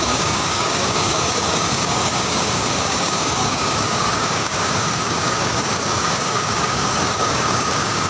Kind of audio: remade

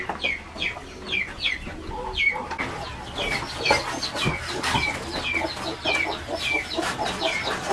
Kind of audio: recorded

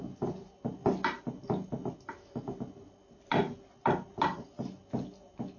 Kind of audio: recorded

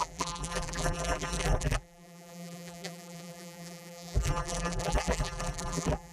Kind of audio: remade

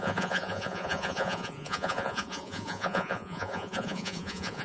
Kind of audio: remade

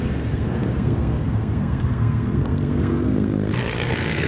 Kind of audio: remade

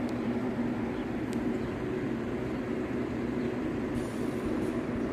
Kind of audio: recorded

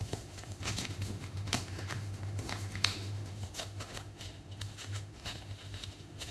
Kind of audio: remade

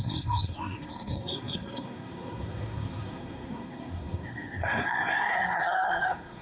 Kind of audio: remade